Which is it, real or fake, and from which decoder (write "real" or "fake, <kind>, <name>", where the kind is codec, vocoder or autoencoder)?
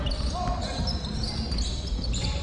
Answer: real